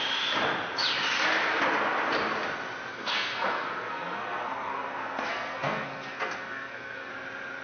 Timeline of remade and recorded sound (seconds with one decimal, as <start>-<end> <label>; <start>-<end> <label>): 0.0-2.9 recorded; 2.9-7.1 remade; 7.1-7.6 recorded